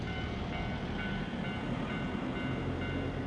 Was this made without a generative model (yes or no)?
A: yes